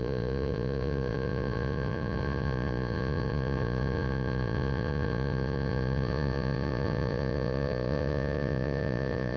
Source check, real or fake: fake